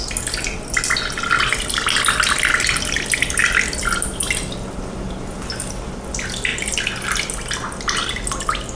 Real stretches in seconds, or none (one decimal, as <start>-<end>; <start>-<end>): 0.0-8.7